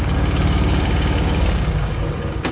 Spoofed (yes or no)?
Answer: yes